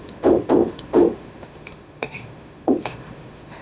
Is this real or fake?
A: fake